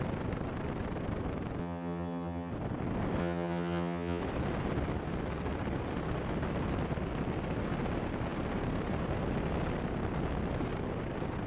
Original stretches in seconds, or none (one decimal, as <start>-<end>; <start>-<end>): 0.0-1.6; 2.5-3.2; 4.2-11.5